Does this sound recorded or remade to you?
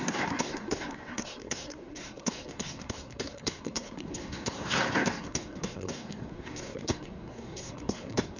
remade